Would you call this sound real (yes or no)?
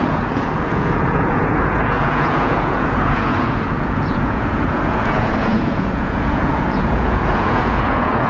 no